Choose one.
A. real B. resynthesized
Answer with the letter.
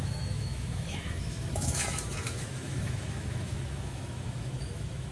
B